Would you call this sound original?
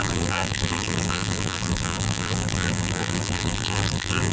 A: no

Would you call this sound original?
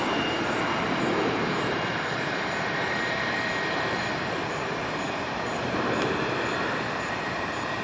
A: no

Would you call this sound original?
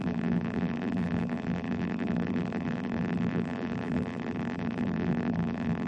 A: no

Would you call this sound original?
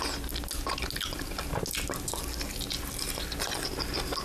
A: yes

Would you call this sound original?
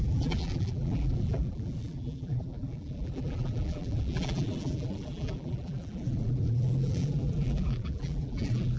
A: no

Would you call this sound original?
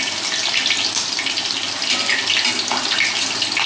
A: yes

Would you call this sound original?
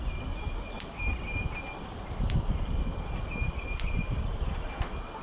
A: yes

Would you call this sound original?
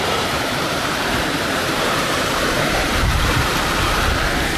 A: no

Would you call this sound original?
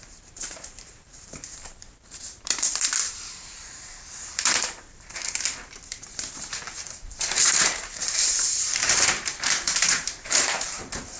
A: no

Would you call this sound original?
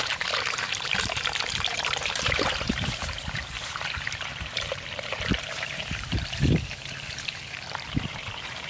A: no